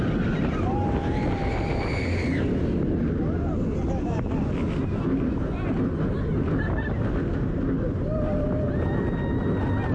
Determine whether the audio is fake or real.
real